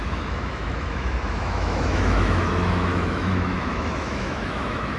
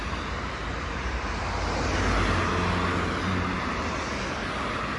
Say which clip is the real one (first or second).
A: second